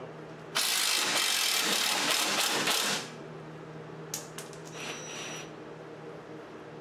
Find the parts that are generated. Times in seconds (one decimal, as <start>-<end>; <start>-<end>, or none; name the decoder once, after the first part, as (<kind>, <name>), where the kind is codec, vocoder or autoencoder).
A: 1.5-2.2 (vocoder, BigVGAN v2); 4.6-5.3